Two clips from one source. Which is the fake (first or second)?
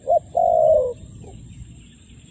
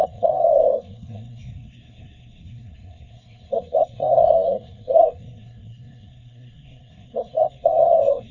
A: second